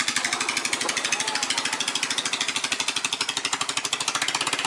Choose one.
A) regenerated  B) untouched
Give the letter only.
B